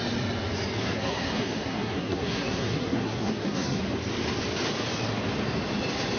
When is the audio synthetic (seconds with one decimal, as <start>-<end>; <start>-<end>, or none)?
0.8-3.8